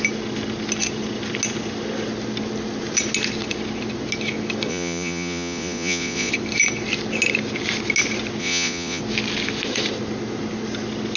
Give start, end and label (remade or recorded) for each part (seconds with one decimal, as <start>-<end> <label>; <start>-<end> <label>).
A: 0.0-4.7 recorded; 4.7-6.3 remade; 6.3-8.4 recorded; 8.4-9.0 remade; 9.0-11.2 recorded